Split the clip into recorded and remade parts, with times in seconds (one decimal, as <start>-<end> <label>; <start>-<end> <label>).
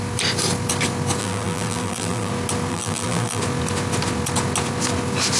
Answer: 0.0-1.2 recorded; 1.2-2.3 remade; 2.3-2.7 recorded; 2.7-3.4 remade; 3.4-5.4 recorded